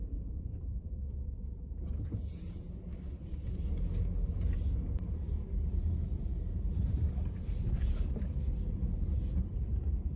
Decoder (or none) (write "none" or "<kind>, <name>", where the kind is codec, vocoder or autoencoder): vocoder, BigVGAN v2